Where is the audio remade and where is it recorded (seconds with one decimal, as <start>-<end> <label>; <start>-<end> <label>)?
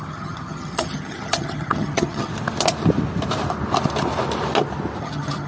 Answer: 0.0-2.3 remade; 2.3-5.0 recorded; 5.0-5.5 remade